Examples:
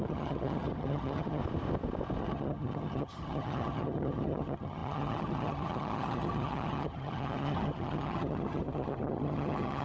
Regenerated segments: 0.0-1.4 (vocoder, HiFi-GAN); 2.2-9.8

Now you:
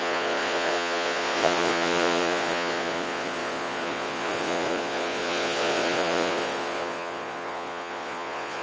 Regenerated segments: 0.0-8.6 (vocoder, Vocos)

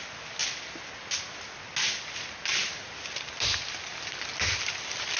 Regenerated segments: none

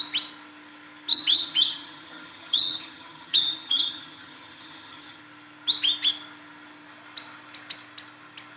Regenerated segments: 1.1-5.2 (vocoder, HiFi-GAN)